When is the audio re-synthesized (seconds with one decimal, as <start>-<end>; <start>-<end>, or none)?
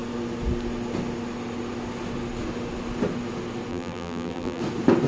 3.7-4.6